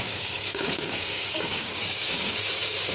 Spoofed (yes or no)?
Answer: yes